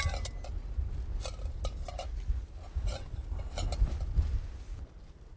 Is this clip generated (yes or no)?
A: no